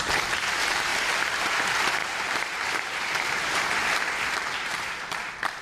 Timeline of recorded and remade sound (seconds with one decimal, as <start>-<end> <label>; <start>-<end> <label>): 0.0-0.9 remade; 0.9-1.5 recorded; 1.5-3.8 remade; 3.8-4.4 recorded; 4.4-5.6 remade